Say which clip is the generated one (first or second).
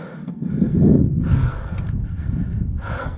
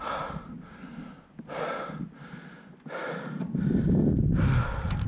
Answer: first